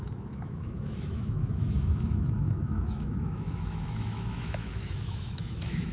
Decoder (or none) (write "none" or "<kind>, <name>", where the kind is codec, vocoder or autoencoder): autoencoder, DAC-VAE